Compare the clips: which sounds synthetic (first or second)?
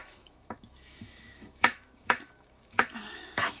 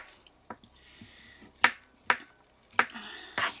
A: first